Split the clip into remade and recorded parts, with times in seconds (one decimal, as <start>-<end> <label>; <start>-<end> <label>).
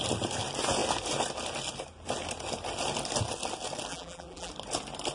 0.0-3.9 recorded; 3.9-4.5 remade; 4.5-5.1 recorded